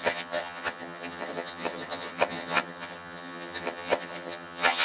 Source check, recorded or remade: remade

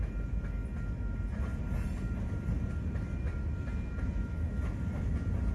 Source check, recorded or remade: recorded